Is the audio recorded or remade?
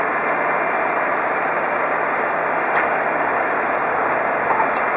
recorded